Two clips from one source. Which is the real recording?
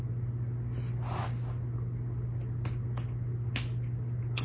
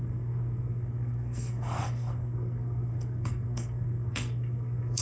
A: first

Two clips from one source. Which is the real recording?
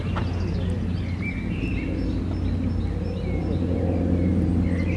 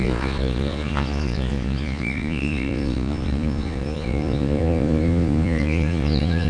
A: first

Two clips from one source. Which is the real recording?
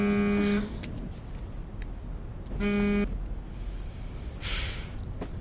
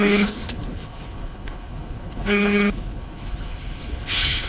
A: first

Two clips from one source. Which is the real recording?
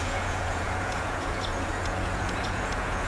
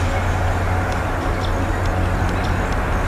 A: second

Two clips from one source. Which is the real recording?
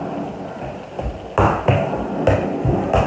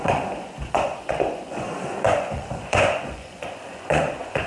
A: first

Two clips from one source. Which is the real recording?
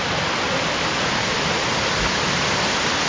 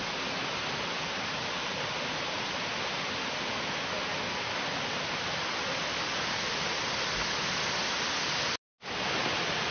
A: second